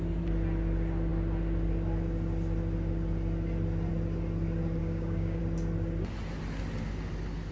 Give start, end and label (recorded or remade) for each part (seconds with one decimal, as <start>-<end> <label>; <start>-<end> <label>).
0.0-4.8 recorded; 4.8-5.4 remade; 5.4-7.5 recorded